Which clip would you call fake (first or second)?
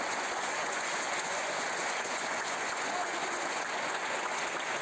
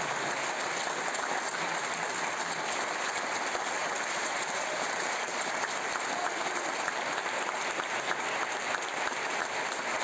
first